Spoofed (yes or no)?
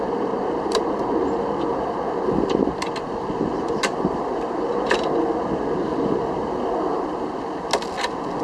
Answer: no